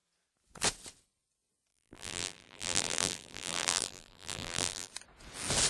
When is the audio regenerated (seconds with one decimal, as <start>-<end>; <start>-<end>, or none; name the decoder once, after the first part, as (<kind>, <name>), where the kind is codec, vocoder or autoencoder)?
1.7-4.9 (vocoder, BigVGAN v2)